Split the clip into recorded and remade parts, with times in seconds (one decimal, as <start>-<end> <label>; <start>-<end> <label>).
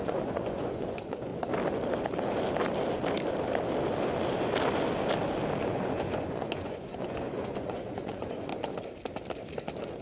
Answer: 0.0-1.3 remade; 1.3-5.6 recorded; 5.6-8.5 remade; 8.5-10.0 recorded